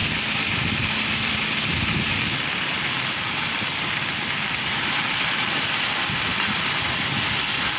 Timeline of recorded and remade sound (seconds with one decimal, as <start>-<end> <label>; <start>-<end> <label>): 0.0-7.8 recorded